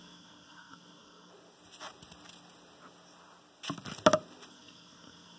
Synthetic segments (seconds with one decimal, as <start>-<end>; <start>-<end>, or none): 0.0-1.3; 4.5-5.4